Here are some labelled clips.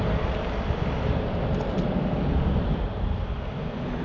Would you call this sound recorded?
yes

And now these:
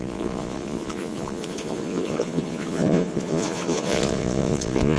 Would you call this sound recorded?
no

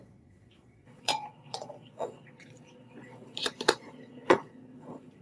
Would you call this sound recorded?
no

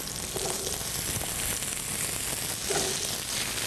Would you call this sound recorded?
yes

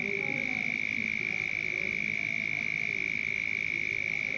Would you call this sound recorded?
yes